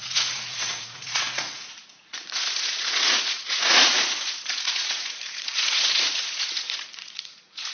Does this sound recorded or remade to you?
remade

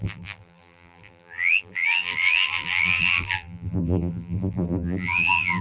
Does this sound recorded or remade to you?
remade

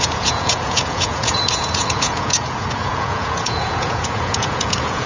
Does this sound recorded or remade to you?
remade